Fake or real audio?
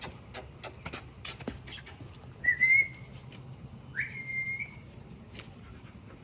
real